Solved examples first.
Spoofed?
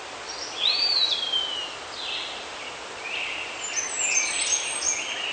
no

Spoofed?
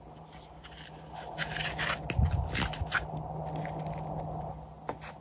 no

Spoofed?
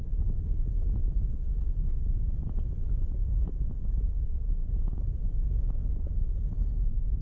yes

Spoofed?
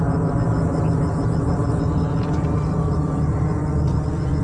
no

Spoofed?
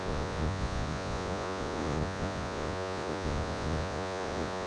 yes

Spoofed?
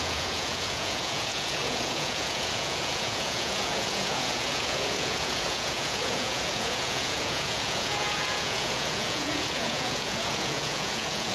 yes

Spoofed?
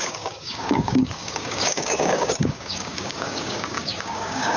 yes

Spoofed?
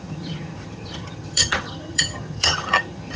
yes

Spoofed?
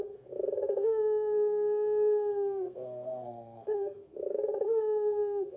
yes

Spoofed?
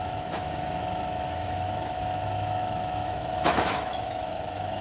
yes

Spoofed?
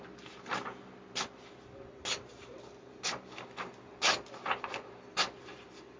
no